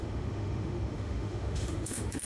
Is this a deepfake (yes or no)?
yes